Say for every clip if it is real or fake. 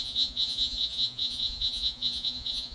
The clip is fake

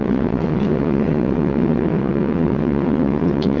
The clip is fake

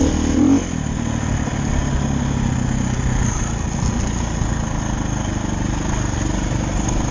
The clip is real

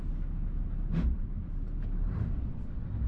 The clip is real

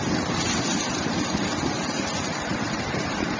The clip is real